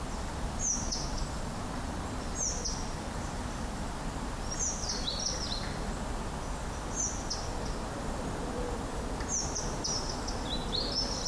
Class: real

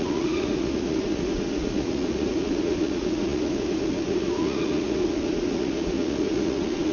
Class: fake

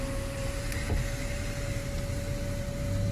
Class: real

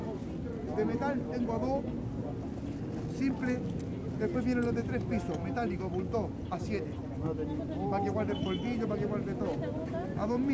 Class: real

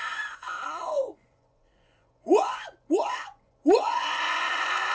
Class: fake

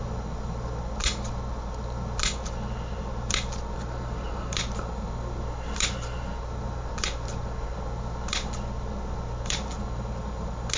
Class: real